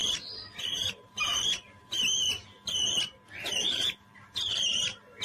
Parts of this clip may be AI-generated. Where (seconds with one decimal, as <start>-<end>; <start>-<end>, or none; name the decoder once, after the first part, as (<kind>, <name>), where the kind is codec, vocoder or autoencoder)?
0.6-1.3 (vocoder, BigVGAN v2); 3.5-5.2